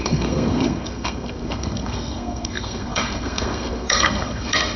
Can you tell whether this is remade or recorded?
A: remade